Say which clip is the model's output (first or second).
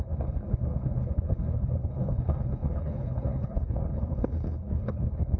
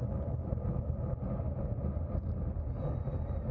first